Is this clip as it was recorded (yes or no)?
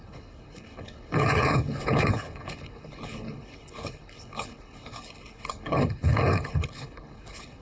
no